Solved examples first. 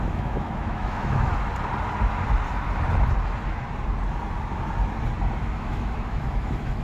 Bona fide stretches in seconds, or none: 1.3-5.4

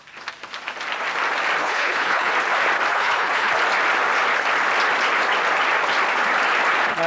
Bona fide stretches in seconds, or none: 0.0-1.6; 2.3-2.9; 3.5-7.1

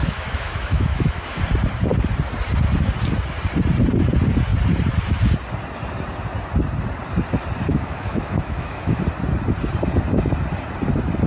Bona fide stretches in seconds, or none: 1.4-7.7; 9.0-11.3

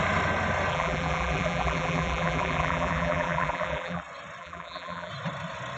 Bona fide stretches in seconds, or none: 0.0-0.7; 4.0-4.4; 5.1-5.8

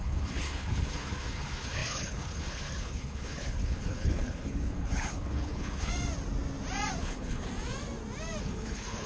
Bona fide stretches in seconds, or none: 5.9-7.0; 7.5-8.4